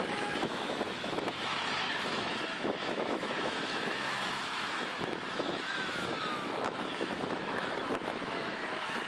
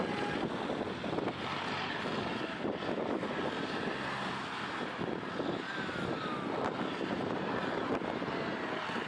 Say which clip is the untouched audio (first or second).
second